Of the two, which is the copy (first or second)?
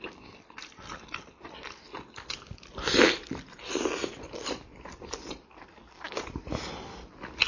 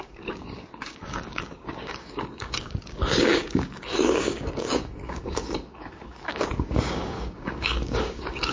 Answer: second